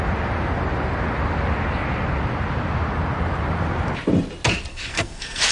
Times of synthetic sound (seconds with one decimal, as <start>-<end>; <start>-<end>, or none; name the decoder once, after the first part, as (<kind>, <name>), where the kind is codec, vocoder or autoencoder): 4.7-5.5 (codec, SNAC)